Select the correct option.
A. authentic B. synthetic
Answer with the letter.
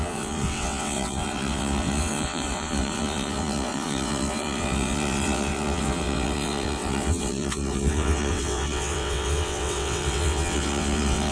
B